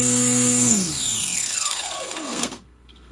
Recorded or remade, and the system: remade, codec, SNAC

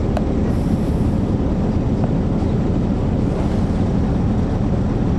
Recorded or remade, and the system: recorded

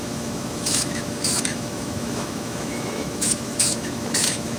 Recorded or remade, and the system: remade, autoencoder, DAC-VAE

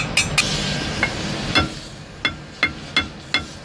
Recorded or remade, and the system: recorded